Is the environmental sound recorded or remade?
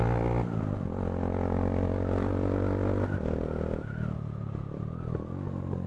recorded